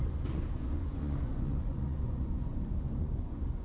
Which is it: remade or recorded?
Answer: remade